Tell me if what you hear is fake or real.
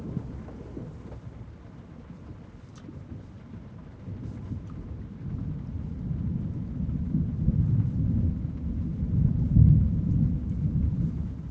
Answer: real